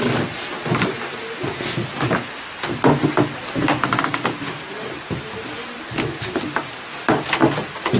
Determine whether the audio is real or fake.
real